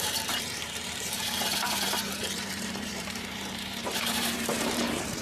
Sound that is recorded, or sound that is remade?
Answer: remade